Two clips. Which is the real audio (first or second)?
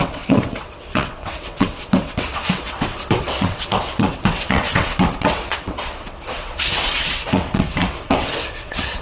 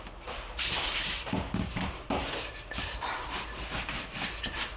second